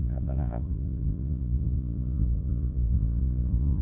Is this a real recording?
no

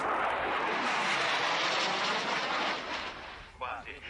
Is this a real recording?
yes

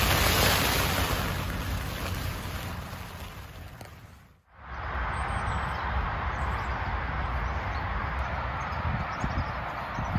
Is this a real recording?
yes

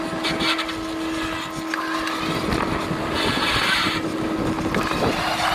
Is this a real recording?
yes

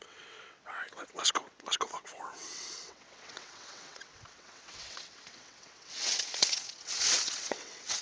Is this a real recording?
no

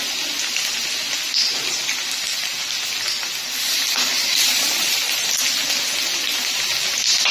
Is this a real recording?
yes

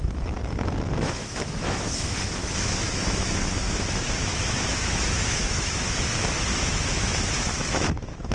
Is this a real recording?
no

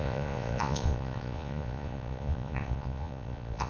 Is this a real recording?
no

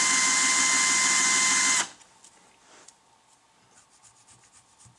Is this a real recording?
yes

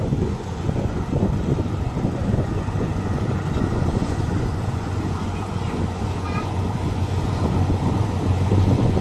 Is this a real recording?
no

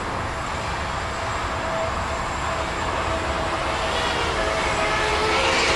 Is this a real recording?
yes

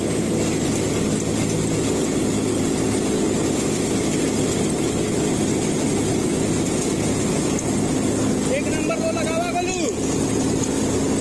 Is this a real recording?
yes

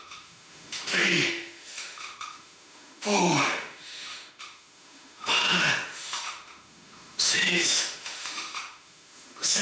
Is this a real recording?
no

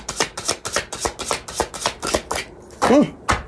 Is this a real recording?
yes